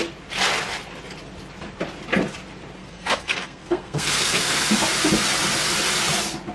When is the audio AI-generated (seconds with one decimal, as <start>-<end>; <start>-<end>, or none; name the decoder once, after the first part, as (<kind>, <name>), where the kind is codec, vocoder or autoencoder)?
2.8-4.7 (codec, SNAC)